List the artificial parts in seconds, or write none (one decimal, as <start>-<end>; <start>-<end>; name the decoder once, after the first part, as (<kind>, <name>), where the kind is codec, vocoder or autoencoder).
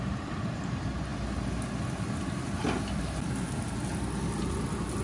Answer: none